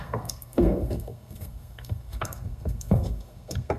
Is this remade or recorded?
remade